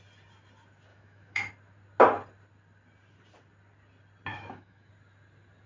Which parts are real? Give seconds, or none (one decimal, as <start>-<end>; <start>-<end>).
0.0-0.9; 1.4-4.3; 4.9-5.7